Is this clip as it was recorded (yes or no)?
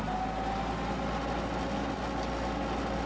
yes